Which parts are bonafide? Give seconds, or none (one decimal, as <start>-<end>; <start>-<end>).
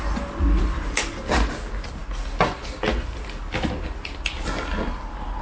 0.0-5.4